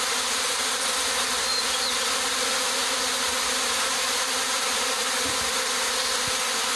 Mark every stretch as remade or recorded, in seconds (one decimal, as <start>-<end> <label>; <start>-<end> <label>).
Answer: 0.0-6.8 recorded